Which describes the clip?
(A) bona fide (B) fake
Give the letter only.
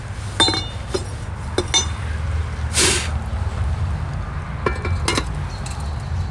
A